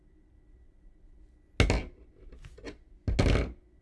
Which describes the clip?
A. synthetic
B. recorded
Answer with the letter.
B